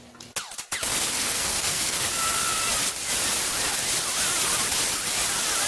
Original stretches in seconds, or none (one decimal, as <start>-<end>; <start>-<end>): 0.0-0.9; 2.1-5.7